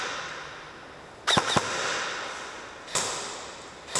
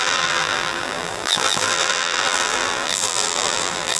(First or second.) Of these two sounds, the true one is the first